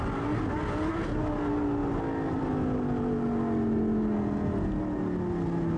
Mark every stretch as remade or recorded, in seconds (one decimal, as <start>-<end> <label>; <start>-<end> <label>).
0.0-5.8 recorded

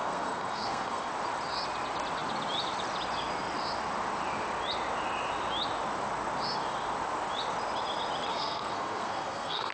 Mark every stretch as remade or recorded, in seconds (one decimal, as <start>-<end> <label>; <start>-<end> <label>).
0.0-1.1 remade; 1.1-8.3 recorded; 8.3-9.7 remade

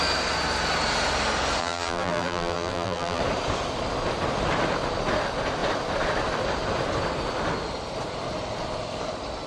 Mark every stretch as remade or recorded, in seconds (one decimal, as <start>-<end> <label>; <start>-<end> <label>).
0.0-1.6 recorded; 1.6-3.2 remade; 3.2-9.5 recorded